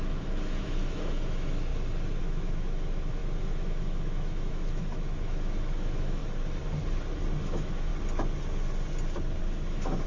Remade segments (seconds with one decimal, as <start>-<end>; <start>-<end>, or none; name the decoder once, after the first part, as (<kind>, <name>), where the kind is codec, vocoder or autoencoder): 0.0-1.7 (autoencoder, DAC-VAE); 2.2-6.2; 7.4-7.9; 9.4-10.1